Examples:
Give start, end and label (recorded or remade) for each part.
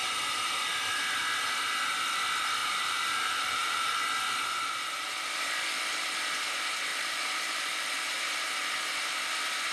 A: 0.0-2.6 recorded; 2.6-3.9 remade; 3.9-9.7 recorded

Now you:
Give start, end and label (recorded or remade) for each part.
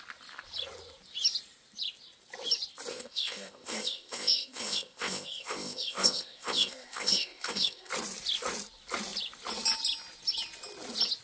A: 0.0-2.9 recorded; 2.9-7.9 remade; 7.9-11.2 recorded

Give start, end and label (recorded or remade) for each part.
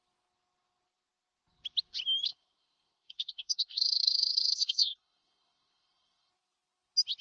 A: 0.0-2.3 recorded; 2.3-6.3 remade; 6.3-7.2 recorded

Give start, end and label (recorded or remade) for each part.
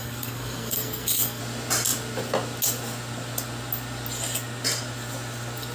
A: 0.0-1.4 remade; 1.4-5.7 recorded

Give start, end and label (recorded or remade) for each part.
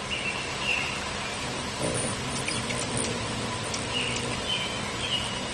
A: 0.0-5.5 recorded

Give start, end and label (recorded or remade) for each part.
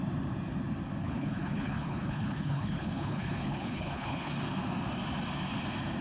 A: 0.0-1.0 recorded; 1.0-4.3 remade; 4.3-6.0 recorded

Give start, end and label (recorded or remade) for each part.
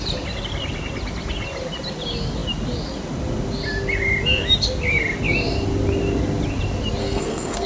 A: 0.0-7.0 recorded; 7.0-7.7 remade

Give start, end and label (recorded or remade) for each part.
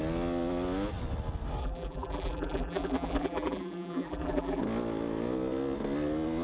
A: 0.0-1.6 recorded; 1.6-4.6 remade; 4.6-6.4 recorded